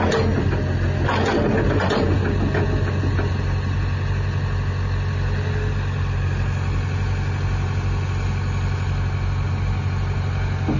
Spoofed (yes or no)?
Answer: no